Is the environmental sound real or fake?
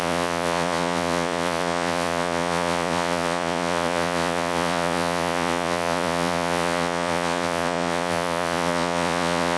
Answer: fake